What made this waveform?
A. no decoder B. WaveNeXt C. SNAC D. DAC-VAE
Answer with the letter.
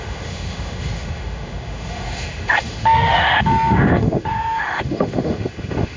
D